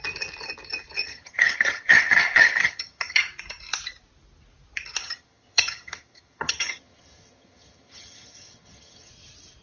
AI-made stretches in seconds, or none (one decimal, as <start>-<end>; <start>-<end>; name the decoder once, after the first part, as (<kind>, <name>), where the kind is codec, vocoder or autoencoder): 1.0-3.3 (vocoder, HiFi-GAN); 5.0-9.1